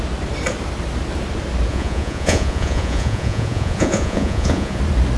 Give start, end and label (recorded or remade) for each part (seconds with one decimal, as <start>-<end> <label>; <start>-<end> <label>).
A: 0.0-1.7 recorded; 1.7-4.8 remade; 4.8-5.2 recorded